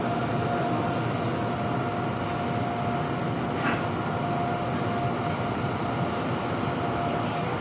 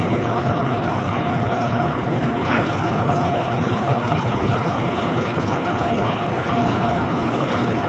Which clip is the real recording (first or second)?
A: first